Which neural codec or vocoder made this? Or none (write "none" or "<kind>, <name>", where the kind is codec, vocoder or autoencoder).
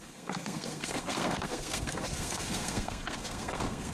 codec, SNAC